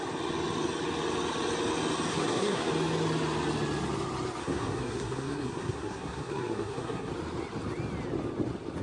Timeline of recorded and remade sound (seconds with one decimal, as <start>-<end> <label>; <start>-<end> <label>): 0.0-2.1 recorded; 2.1-2.7 remade; 2.7-4.4 recorded; 4.4-7.1 remade; 7.1-8.8 recorded